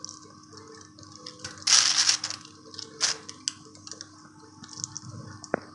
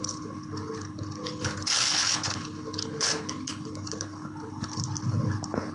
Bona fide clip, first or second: first